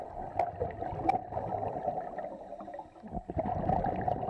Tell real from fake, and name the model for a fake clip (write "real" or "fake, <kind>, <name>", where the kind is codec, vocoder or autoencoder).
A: real